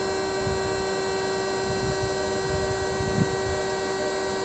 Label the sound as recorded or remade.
recorded